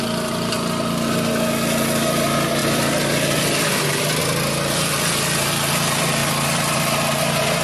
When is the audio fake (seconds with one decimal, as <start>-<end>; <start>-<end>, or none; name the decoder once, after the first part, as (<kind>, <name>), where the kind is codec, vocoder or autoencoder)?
2.6-4.2 (vocoder, BigVGAN v2); 6.2-6.8